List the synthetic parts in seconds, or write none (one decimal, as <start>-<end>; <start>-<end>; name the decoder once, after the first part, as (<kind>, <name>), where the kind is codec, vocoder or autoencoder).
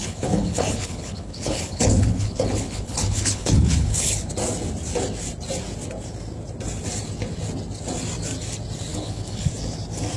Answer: 0.0-4.3 (codec, HILCodec); 8.9-9.5